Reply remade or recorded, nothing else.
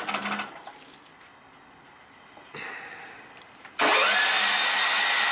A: recorded